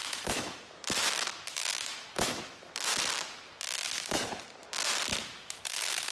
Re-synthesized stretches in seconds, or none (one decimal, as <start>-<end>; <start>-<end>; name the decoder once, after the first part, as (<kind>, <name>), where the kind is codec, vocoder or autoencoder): 0.0-2.9 (autoencoder, DAC-VAE); 5.2-6.1